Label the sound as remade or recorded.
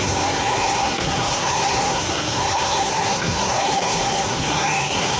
remade